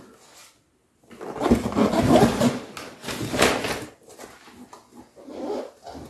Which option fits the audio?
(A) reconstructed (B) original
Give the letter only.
B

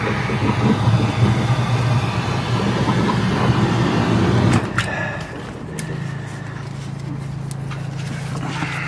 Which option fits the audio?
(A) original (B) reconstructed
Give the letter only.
A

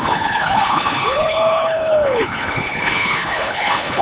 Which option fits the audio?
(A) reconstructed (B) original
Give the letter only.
A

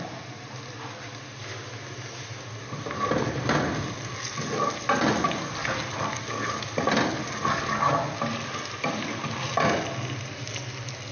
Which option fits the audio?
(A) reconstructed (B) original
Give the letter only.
B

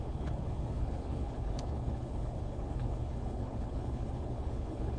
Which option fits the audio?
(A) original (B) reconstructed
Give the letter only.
B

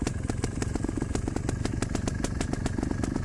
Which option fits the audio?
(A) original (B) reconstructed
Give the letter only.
A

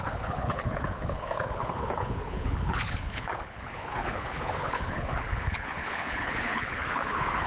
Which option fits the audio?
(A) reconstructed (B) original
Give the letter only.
A